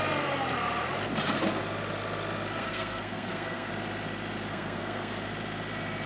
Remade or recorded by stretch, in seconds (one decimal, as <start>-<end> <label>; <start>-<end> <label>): 0.0-2.6 recorded; 2.6-3.7 remade; 3.7-4.5 recorded; 4.5-5.3 remade; 5.3-6.1 recorded